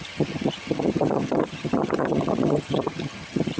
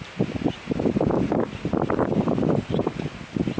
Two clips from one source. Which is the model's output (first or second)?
first